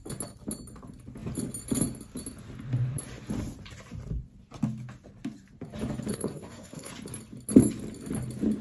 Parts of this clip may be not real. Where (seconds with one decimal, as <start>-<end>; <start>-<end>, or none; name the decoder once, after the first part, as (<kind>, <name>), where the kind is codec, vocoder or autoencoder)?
6.1-6.9 (codec, SNAC)